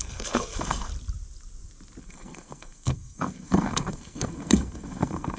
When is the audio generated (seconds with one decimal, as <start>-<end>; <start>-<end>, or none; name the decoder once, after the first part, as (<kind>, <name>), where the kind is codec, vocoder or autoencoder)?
0.0-0.9 (codec, SNAC); 2.0-5.4